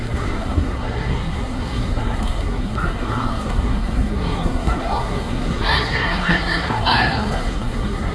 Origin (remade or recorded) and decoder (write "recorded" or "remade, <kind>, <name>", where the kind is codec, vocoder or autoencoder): remade, codec, SNAC